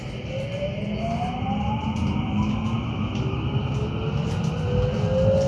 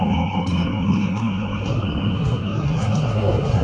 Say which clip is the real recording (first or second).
first